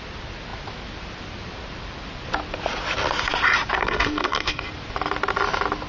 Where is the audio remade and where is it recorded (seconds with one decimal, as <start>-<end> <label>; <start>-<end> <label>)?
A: 0.0-3.8 recorded; 3.8-4.7 remade; 4.7-5.9 recorded